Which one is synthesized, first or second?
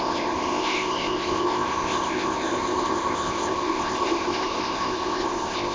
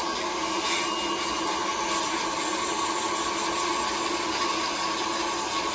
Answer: first